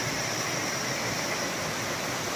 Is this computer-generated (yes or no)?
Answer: no